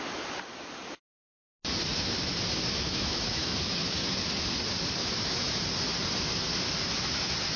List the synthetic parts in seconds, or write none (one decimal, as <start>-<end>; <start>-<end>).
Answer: 2.7-4.2; 5.0-5.6